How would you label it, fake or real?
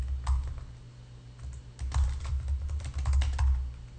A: real